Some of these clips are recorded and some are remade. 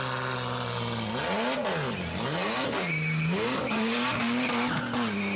recorded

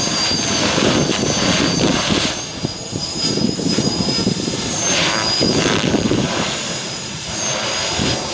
remade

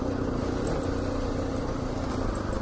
recorded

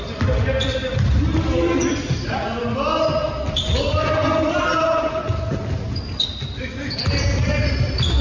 recorded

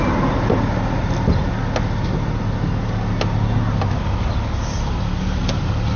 recorded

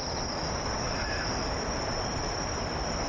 recorded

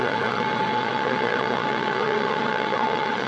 remade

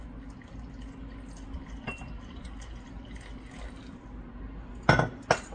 recorded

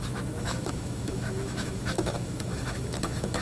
remade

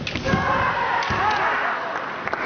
recorded